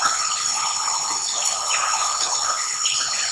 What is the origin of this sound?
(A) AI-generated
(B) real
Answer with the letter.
A